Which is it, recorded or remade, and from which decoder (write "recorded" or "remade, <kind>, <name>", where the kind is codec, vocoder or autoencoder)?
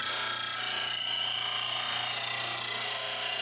recorded